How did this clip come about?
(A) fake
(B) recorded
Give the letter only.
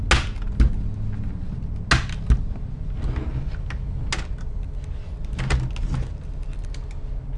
B